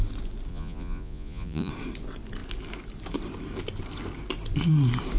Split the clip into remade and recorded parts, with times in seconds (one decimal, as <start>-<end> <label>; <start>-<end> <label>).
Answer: 0.0-0.5 recorded; 0.5-1.7 remade; 1.7-5.2 recorded